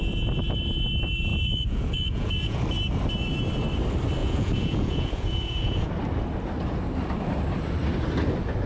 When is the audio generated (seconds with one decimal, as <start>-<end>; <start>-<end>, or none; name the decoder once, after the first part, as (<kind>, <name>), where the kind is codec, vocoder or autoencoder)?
1.3-2.6 (vocoder, Vocos); 4.2-5.9